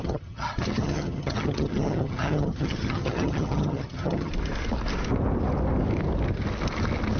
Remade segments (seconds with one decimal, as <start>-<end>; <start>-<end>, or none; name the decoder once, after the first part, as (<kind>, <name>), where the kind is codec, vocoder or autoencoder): 0.0-4.3 (vocoder, HiFi-GAN)